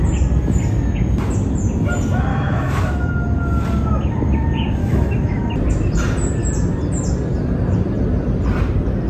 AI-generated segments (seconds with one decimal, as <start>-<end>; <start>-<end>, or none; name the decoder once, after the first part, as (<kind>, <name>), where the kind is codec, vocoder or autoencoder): 2.3-3.1 (autoencoder, DAC-VAE); 4.8-5.5